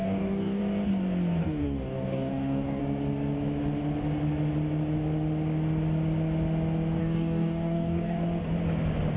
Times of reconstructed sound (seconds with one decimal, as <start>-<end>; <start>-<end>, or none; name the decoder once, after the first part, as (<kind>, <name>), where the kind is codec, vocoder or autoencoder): 0.0-0.6 (codec, DAC); 1.4-2.8; 7.0-8.2